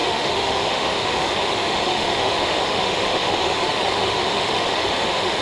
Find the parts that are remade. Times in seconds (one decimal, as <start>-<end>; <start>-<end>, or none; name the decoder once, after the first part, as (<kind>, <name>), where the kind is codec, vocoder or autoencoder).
0.0-5.4 (autoencoder, DAC-VAE)